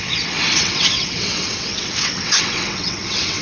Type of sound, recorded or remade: remade